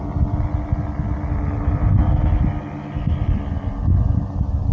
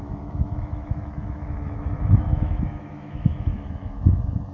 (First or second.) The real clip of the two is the first